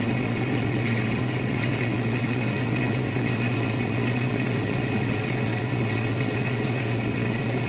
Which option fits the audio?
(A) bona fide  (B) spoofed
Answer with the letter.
B